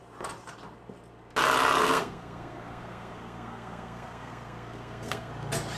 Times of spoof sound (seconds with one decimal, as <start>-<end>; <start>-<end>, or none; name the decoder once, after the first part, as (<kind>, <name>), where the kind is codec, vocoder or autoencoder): 1.8-5.3 (codec, SNAC)